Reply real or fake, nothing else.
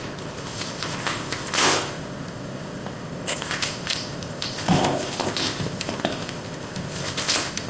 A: fake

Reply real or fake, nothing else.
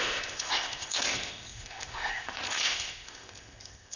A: fake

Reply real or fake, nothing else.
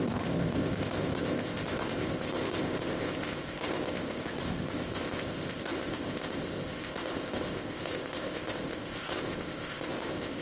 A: fake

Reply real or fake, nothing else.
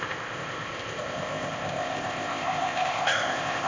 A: fake